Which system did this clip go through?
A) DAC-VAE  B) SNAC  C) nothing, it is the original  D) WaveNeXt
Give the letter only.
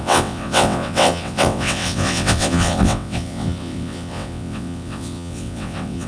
D